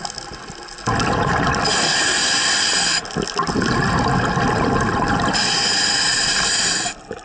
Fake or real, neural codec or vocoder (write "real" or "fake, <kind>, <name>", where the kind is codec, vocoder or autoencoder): real